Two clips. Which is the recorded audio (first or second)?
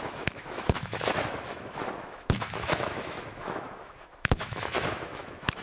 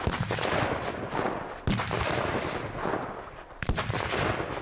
second